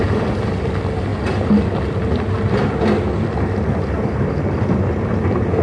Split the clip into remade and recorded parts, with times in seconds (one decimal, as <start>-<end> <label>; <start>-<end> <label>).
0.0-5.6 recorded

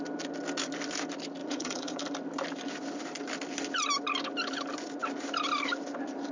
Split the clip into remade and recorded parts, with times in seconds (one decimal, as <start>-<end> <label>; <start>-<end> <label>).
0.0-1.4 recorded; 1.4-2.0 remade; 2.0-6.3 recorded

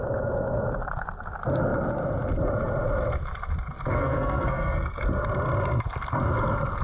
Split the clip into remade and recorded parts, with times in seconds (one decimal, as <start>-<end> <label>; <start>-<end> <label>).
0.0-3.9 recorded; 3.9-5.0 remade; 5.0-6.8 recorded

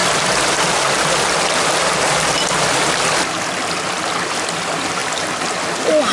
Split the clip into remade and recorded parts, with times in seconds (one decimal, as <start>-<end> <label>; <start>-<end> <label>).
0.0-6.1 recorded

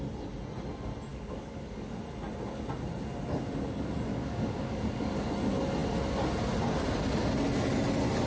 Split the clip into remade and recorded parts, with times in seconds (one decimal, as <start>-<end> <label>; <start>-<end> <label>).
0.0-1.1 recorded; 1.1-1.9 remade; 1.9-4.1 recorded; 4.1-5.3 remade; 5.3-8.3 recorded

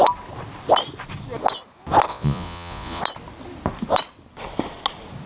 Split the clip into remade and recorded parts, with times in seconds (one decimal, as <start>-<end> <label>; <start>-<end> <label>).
0.0-2.1 recorded; 2.1-3.0 remade; 3.0-5.3 recorded

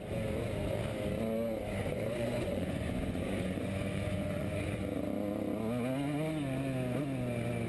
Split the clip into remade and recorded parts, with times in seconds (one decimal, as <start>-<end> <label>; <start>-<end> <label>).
0.0-1.8 recorded; 1.8-4.8 remade; 4.8-7.7 recorded

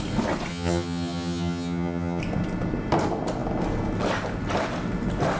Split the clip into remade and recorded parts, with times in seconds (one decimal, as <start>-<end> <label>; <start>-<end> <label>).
0.0-0.5 recorded; 0.5-2.2 remade; 2.2-5.4 recorded